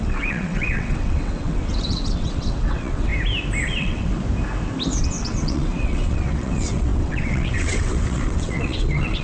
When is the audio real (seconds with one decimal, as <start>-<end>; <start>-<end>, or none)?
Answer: 3.1-3.6; 4.1-5.0